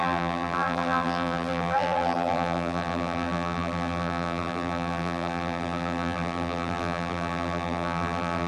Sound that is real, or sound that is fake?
fake